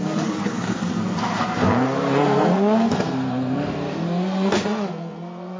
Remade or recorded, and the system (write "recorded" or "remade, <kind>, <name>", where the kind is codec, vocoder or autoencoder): remade, codec, SNAC